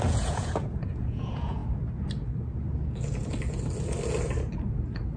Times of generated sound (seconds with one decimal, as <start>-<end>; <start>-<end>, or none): 0.0-1.6; 4.7-5.2